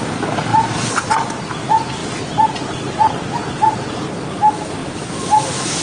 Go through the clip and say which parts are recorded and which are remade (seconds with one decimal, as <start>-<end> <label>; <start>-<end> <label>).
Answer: 0.0-4.8 recorded; 4.8-5.8 remade